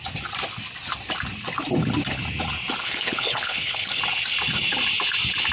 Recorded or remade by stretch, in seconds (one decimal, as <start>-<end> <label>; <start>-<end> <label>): 0.0-2.8 recorded; 2.8-4.0 remade; 4.0-5.5 recorded